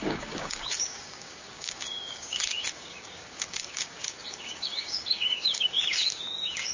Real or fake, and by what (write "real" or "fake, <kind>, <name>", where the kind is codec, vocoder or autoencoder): fake, codec, DAC